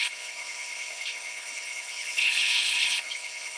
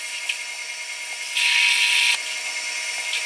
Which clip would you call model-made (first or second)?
first